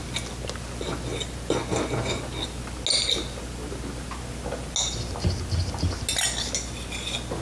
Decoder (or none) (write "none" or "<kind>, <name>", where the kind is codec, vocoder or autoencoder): none